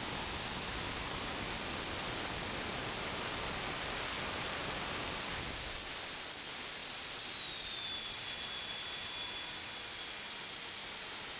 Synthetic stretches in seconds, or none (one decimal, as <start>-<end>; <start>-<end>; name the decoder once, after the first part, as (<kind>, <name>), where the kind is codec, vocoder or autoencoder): none